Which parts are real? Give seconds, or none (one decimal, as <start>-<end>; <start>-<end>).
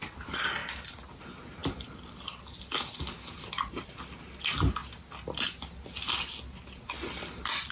0.0-7.7